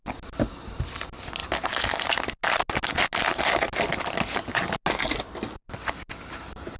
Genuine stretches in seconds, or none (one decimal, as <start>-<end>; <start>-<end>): 0.0-6.8